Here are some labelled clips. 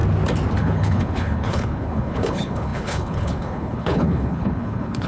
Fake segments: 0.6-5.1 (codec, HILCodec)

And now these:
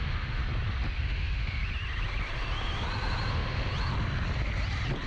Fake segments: 0.0-0.4 (autoencoder, DAC-VAE); 1.0-1.6; 3.3-3.7

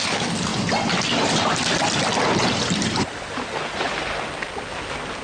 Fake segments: none

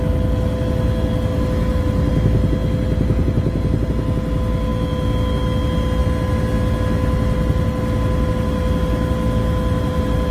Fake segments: none

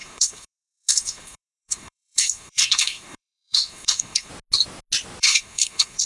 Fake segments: 0.0-4.3 (codec, SNAC); 5.2-6.1